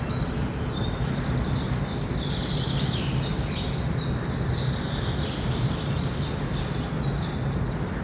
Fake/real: real